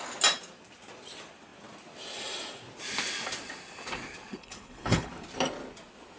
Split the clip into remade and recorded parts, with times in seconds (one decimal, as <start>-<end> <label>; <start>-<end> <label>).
0.0-4.3 recorded; 4.3-5.1 remade; 5.1-6.2 recorded